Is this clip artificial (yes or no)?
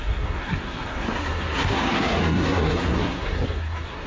yes